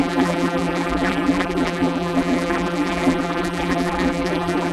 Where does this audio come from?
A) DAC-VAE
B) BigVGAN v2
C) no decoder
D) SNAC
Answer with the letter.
B